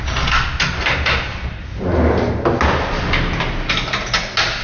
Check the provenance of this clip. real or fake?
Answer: real